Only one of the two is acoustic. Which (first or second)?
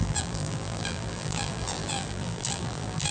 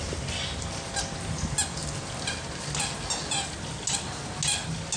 second